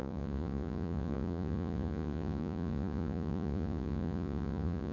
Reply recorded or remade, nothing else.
remade